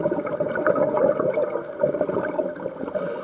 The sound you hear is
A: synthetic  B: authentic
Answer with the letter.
B